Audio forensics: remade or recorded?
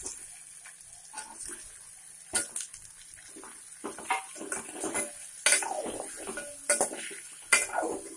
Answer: recorded